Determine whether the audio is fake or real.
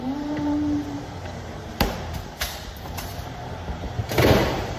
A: fake